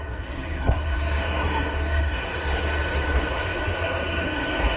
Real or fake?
fake